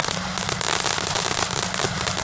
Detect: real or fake real